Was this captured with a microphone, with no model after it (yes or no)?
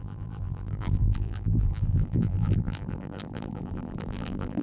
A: no